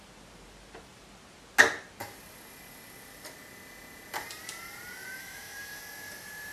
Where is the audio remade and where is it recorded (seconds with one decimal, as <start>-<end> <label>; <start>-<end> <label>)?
0.0-5.2 recorded; 5.2-5.8 remade; 5.8-6.5 recorded